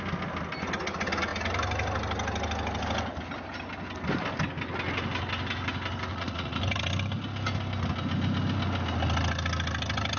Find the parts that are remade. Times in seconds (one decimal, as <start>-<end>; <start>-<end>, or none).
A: 6.1-6.6